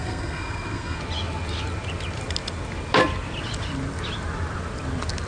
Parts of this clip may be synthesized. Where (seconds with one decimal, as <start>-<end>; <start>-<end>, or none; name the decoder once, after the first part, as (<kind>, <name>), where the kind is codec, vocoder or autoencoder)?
0.0-1.0 (codec, SNAC)